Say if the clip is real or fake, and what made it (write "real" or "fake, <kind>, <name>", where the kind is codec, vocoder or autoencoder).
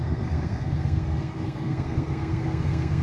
fake, codec, SNAC